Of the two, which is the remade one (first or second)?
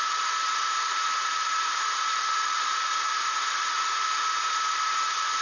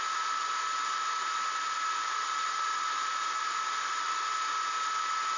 first